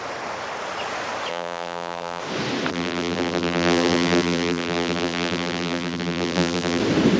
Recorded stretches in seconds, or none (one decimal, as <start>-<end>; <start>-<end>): 0.0-1.3; 2.2-2.7; 6.8-7.2